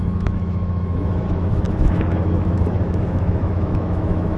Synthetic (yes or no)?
yes